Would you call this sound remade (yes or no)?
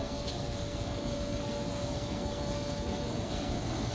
yes